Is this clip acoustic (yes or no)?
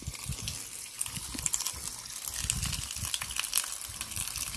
yes